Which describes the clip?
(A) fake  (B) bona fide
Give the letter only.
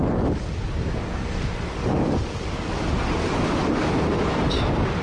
B